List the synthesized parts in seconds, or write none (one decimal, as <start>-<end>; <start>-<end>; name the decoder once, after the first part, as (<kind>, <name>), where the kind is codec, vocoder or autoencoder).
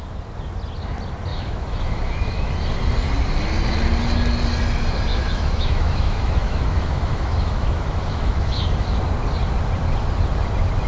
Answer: 1.3-2.5 (autoencoder, DAC-VAE); 5.1-9.0